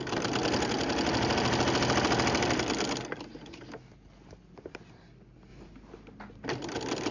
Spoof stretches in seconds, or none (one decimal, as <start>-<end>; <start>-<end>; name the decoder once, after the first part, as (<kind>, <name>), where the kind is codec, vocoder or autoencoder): none